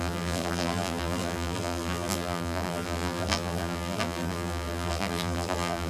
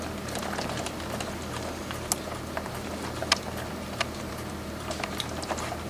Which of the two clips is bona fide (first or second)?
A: second